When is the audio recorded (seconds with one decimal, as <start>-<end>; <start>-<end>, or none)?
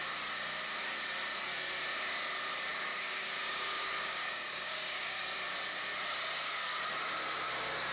0.0-2.7; 5.2-7.9